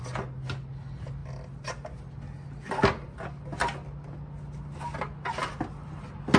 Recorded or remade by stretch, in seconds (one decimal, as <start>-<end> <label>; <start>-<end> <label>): 0.0-6.4 recorded